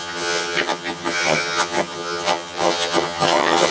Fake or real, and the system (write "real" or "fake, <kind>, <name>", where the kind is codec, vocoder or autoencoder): fake, vocoder, HiFi-GAN